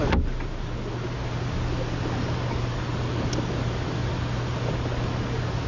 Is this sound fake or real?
real